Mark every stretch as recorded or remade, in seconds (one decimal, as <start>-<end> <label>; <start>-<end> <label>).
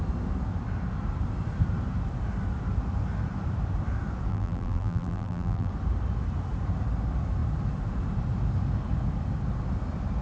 0.0-4.3 recorded; 4.3-5.7 remade; 5.7-10.2 recorded